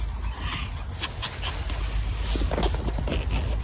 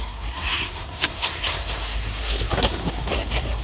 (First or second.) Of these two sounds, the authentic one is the first